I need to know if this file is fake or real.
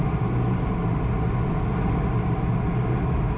real